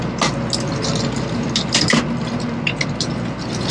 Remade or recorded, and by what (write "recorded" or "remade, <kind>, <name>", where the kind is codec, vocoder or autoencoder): recorded